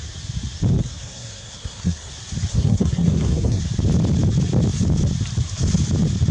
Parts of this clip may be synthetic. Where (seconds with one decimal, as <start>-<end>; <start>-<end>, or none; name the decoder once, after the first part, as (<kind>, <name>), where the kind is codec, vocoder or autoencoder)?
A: 0.8-2.1 (codec, SNAC); 2.5-3.6